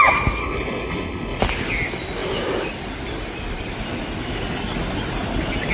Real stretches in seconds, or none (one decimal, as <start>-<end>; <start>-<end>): 0.0-0.4; 1.4-5.7